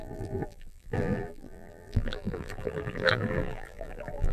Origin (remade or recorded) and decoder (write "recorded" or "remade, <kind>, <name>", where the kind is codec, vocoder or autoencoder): remade, vocoder, BigVGAN v2